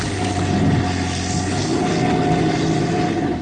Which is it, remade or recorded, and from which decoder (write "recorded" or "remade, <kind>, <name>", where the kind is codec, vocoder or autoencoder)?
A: recorded